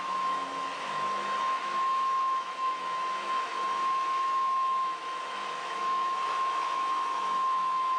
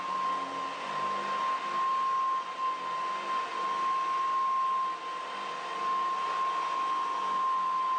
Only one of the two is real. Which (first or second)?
second